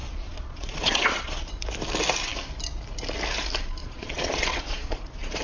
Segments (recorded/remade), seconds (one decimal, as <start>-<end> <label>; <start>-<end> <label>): 0.0-1.5 remade; 1.5-3.8 recorded; 3.8-5.4 remade

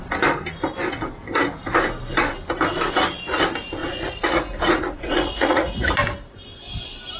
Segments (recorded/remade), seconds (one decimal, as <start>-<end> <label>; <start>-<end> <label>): 0.0-3.8 recorded; 3.8-5.9 remade; 5.9-7.2 recorded

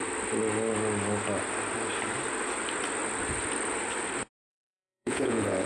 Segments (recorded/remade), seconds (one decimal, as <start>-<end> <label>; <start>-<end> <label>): 0.0-4.5 recorded; 4.5-5.7 remade

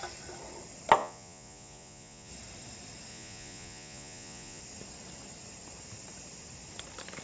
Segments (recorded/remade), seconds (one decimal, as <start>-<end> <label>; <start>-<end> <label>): 0.0-1.0 recorded; 1.0-2.3 remade; 2.3-3.1 recorded; 3.1-4.6 remade; 4.6-7.2 recorded

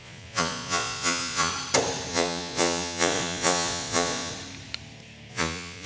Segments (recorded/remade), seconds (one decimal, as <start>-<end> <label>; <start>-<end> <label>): 0.0-1.5 remade; 1.5-2.1 recorded; 2.1-4.3 remade; 4.3-5.3 recorded; 5.3-5.9 remade

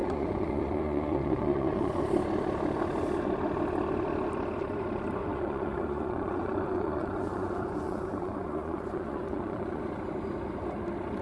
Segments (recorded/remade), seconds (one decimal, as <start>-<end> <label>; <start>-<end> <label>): 0.0-2.0 remade; 2.0-5.2 recorded; 5.2-9.8 remade; 9.8-11.2 recorded

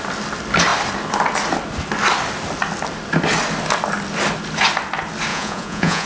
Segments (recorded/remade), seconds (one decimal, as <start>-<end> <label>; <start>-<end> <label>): 0.0-5.3 recorded; 5.3-6.1 remade